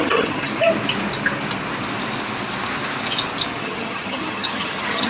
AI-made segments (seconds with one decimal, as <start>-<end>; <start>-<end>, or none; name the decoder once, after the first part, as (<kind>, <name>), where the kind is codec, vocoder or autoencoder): 0.0-0.5 (vocoder, HiFi-GAN); 3.6-5.1